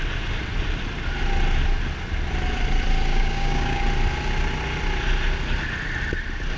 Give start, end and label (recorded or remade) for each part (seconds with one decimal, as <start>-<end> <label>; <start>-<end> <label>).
0.0-3.1 recorded; 3.1-3.8 remade; 3.8-6.6 recorded